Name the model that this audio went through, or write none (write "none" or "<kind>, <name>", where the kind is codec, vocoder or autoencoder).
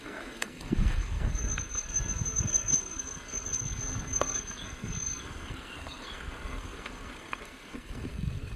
codec, SNAC